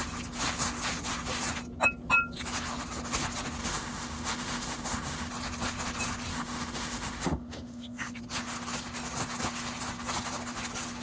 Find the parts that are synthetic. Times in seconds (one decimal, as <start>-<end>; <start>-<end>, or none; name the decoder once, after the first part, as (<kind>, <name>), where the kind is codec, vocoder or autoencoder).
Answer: 3.6-5.3 (autoencoder, DAC-VAE); 6.3-8.2